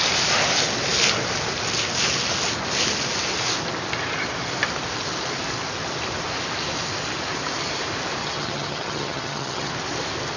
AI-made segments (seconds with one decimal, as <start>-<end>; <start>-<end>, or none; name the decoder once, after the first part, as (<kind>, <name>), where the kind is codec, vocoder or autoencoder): 8.2-9.7 (vocoder, HiFi-GAN)